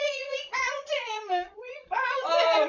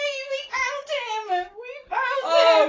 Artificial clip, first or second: first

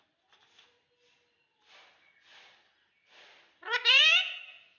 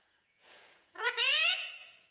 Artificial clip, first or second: second